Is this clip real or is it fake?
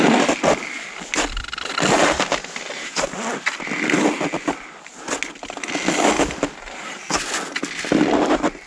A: real